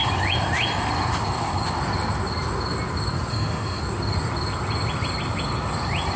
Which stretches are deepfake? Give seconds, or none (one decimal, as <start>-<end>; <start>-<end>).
3.3-3.8